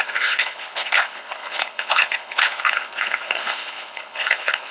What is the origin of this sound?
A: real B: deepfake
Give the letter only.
B